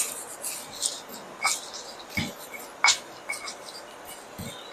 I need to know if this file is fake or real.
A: real